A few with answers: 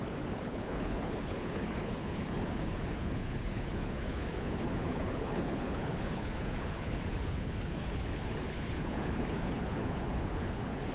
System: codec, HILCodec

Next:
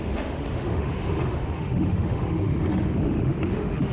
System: autoencoder, DAC-VAE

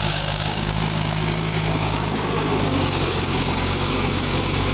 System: codec, DAC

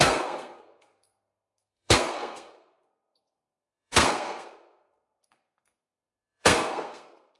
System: codec, SNAC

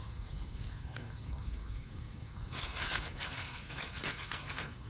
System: codec, SNAC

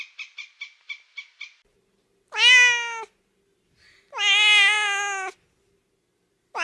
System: none